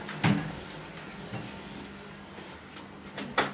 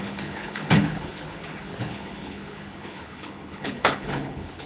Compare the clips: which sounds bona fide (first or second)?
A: first